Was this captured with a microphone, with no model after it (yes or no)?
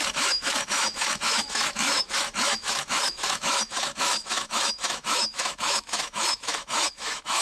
no